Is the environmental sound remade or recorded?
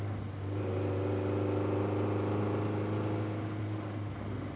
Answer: recorded